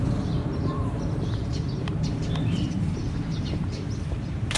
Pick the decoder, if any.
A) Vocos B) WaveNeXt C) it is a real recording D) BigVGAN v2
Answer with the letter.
D